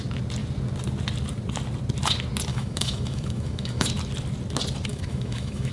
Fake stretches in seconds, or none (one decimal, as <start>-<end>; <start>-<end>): 2.5-3.9; 4.9-5.7